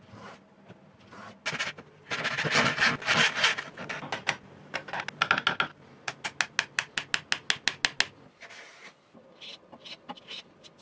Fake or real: real